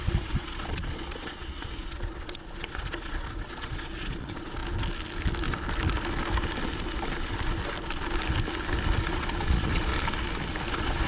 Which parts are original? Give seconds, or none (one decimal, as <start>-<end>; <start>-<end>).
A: 4.6-9.1; 9.9-10.7